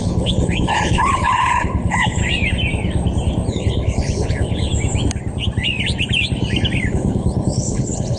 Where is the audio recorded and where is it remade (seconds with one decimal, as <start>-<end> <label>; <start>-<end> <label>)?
0.0-2.2 remade; 2.2-3.5 recorded; 3.5-4.7 remade; 4.7-6.9 recorded; 6.9-8.2 remade